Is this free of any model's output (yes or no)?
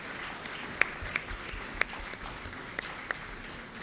yes